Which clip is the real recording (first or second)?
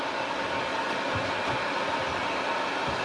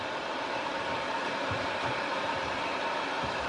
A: first